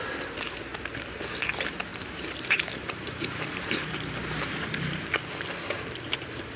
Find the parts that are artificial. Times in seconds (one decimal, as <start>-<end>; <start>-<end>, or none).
1.9-5.0